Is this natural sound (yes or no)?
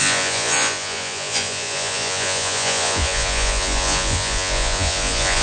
no